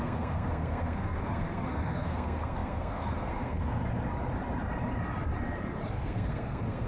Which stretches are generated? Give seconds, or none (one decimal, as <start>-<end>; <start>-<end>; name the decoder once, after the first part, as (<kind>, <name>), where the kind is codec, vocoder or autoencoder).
0.0-3.8 (codec, SNAC); 5.9-6.9